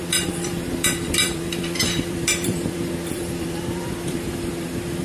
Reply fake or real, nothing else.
fake